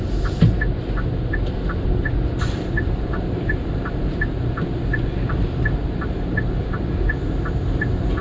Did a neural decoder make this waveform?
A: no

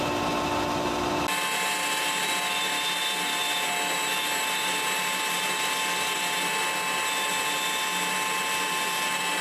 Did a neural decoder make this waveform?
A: no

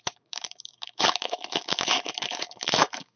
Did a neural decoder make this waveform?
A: yes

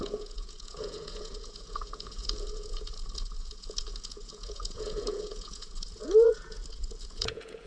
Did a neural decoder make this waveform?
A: yes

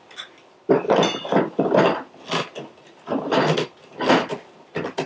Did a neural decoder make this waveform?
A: no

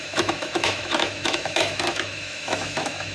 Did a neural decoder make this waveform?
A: yes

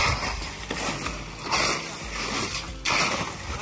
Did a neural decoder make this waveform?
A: no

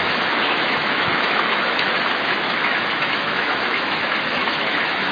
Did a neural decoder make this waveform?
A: yes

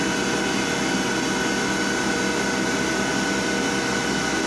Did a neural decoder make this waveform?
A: no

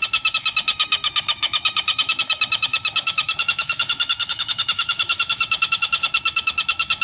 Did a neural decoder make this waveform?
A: yes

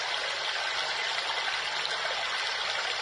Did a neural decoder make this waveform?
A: no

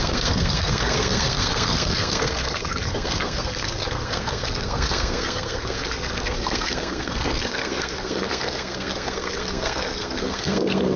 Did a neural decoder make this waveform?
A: yes